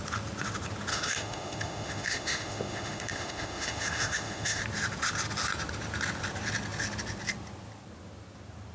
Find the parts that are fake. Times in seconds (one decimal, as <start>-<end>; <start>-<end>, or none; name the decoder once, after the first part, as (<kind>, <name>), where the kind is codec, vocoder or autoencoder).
0.9-4.6 (autoencoder, DAC-VAE)